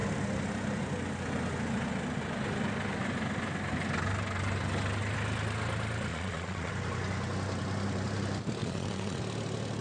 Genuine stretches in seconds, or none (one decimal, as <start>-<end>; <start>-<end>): 0.0-6.1; 6.7-8.6; 9.2-9.8